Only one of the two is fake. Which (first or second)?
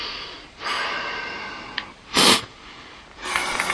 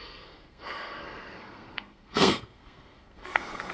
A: second